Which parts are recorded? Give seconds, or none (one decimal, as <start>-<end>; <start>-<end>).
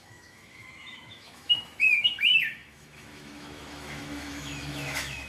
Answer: none